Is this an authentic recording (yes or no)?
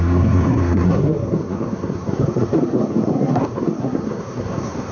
no